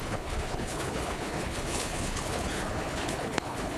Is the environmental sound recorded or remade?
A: remade